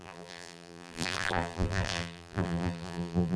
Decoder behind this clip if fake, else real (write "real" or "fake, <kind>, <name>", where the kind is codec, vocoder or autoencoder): fake, vocoder, BigVGAN v2